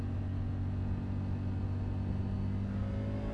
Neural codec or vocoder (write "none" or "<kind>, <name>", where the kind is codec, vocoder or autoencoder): none